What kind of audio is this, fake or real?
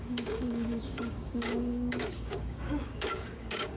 fake